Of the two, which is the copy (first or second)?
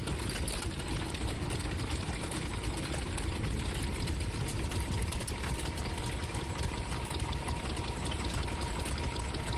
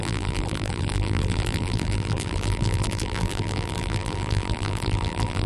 second